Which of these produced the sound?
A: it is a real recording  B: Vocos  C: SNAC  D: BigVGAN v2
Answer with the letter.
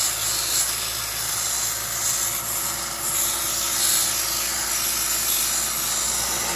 A